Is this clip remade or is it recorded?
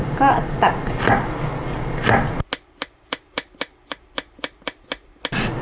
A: recorded